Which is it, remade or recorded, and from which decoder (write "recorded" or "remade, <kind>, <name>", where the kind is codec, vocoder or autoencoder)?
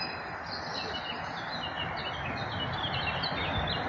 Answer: recorded